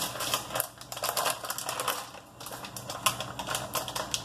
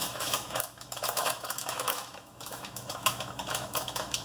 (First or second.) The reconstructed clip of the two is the second